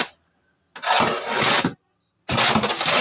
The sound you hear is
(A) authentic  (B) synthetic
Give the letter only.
A